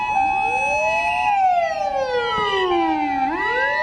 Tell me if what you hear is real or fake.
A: real